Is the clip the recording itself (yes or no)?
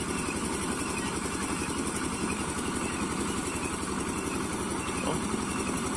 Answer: yes